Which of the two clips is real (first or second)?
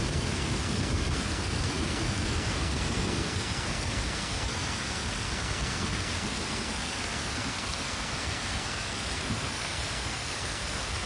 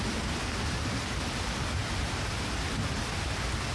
second